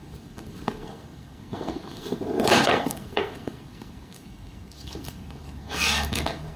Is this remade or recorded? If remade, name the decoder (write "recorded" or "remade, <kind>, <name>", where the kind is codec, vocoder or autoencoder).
remade, codec, SNAC